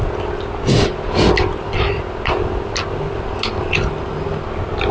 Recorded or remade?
recorded